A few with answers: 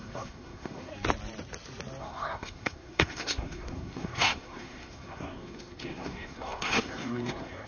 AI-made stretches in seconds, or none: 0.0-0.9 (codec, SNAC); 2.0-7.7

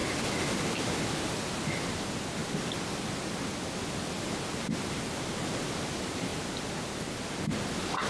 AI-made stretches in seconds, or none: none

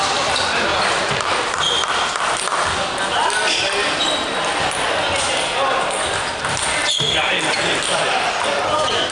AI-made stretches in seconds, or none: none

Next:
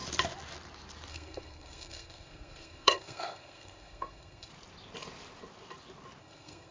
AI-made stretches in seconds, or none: 1.1-4.5 (codec, SNAC); 6.2-6.7

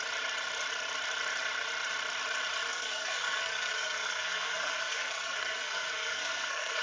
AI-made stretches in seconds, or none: 2.7-6.8 (codec, SNAC)

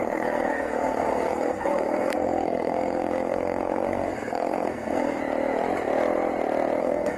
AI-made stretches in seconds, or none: 0.0-5.2 (codec, SNAC); 6.8-7.2

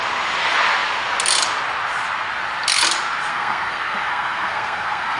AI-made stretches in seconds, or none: 3.3-5.2 (codec, SNAC)

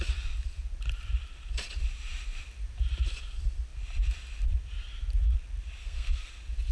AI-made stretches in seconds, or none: 5.8-6.3 (codec, SNAC)